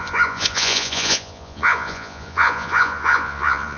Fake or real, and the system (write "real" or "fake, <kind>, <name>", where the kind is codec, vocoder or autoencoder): fake, vocoder, Vocos